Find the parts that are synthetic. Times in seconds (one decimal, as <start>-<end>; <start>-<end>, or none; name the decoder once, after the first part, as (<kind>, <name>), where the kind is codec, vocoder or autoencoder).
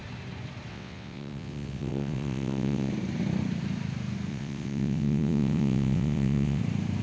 0.7-2.9 (vocoder, WaveNeXt); 4.3-6.6